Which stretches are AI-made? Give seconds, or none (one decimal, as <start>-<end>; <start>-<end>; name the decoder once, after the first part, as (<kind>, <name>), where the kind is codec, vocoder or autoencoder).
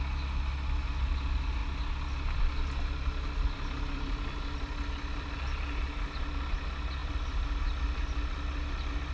7.0-7.6 (vocoder, BigVGAN v2)